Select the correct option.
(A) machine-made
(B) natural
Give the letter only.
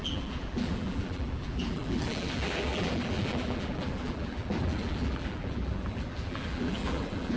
A